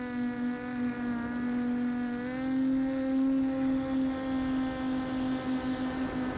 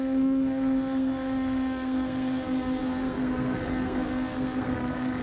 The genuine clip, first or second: first